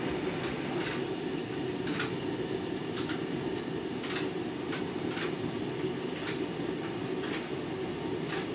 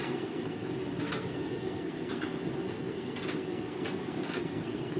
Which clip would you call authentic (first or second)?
first